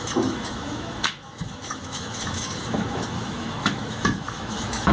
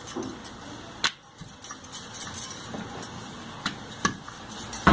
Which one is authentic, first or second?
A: second